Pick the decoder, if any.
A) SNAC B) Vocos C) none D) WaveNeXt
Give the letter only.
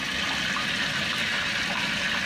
C